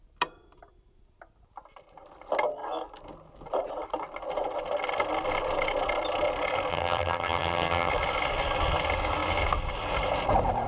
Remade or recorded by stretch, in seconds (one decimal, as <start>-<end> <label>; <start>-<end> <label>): 0.0-6.7 recorded; 6.7-7.9 remade; 7.9-10.7 recorded